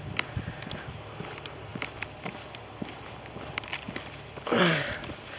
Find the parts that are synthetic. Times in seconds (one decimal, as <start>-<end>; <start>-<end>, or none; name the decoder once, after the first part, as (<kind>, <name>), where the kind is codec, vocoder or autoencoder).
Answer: none